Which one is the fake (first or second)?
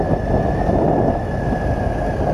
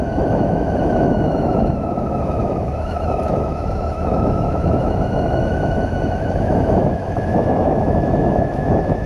second